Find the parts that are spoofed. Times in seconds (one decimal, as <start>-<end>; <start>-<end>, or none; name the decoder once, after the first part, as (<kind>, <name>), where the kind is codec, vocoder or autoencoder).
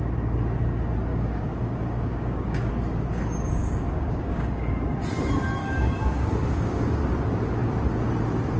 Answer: 1.1-2.7 (codec, DAC); 3.6-5.0; 5.6-6.8